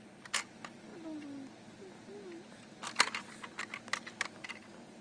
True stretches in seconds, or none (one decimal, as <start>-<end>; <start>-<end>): 0.0-5.0